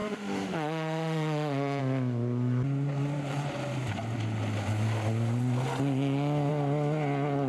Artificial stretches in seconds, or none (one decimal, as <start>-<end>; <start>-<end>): 0.0-1.8